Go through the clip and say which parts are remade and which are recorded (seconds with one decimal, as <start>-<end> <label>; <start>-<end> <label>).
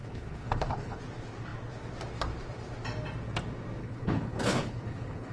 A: 0.0-1.0 remade; 1.0-3.8 recorded; 3.8-5.3 remade